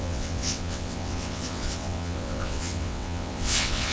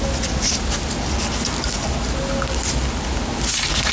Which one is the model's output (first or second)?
first